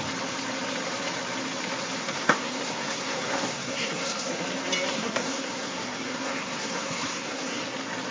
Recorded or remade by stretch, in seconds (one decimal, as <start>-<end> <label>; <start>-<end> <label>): 0.0-2.0 recorded; 2.0-4.4 remade; 4.4-4.9 recorded; 4.9-7.6 remade; 7.6-8.1 recorded